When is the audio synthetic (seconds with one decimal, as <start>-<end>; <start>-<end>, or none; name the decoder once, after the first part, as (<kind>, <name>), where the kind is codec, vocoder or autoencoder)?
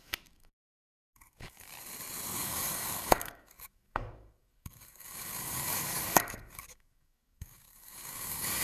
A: 0.0-1.7 (codec, DAC); 2.4-8.6